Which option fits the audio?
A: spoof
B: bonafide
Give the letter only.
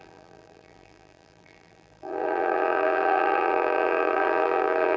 A